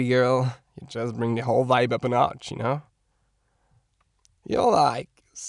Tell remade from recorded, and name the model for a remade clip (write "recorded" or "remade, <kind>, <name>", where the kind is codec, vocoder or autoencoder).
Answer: recorded